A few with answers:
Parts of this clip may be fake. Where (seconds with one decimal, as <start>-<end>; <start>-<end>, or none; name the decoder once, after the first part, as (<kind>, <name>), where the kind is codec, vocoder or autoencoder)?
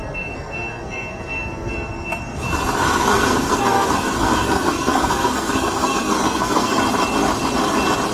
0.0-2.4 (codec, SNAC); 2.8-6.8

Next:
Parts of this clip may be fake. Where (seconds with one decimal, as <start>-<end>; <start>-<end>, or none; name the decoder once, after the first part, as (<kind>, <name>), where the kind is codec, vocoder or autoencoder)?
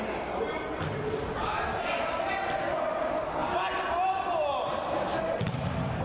none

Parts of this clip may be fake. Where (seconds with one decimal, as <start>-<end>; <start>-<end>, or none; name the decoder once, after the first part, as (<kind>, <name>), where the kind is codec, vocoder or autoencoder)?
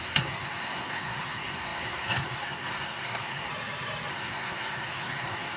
0.0-3.5 (codec, SNAC); 4.1-5.6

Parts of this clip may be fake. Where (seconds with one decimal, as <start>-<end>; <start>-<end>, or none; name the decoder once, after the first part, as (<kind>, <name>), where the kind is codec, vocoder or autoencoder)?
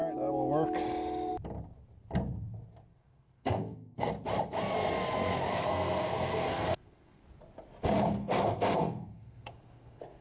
2.9-4.1 (codec, SNAC); 5.5-7.2; 8.2-10.2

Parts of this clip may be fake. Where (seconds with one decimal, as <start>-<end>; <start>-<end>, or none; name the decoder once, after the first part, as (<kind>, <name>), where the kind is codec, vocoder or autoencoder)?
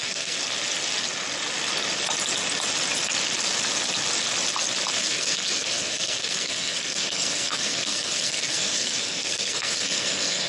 0.0-0.4 (codec, SNAC); 4.9-10.5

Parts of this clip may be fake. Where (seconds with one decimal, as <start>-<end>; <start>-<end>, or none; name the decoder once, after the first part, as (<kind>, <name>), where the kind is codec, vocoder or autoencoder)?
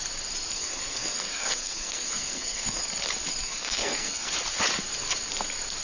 0.5-2.8 (codec, SNAC); 3.4-4.3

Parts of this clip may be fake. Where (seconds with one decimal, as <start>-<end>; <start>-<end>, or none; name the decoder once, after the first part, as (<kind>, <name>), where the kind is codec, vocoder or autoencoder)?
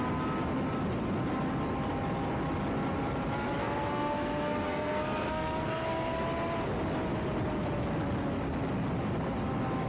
3.6-6.2 (codec, SNAC)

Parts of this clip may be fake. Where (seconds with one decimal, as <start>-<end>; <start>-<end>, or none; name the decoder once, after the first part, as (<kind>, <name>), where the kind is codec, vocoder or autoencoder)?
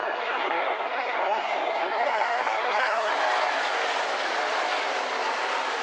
0.0-3.1 (codec, SNAC)